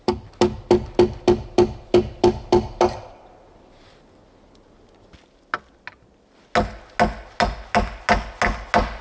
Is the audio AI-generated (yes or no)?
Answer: no